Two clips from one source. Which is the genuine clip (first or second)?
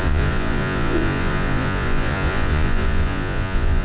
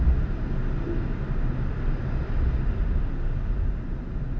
second